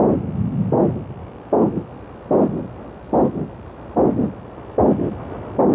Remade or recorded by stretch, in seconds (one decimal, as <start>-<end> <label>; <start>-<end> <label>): 0.0-1.2 recorded; 1.2-1.7 remade; 1.7-5.7 recorded